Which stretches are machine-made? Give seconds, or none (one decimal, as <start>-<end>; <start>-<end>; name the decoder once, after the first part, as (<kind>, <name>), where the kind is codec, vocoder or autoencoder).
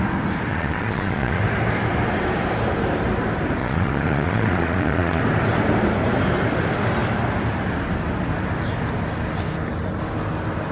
0.5-1.4 (vocoder, Vocos); 3.6-5.2